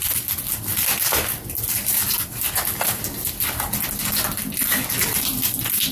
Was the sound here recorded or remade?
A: recorded